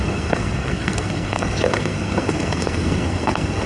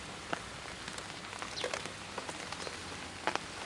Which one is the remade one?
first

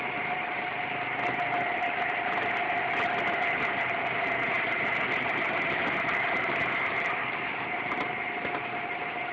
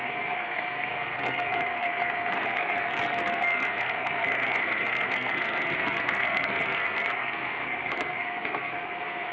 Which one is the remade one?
second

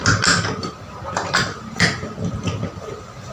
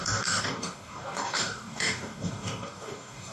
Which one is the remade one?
second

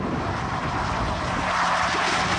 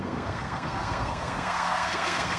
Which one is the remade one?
second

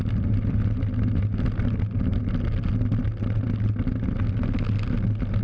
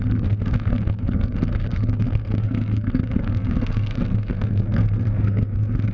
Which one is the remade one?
second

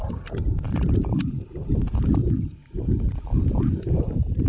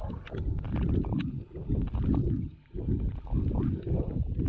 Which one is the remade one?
first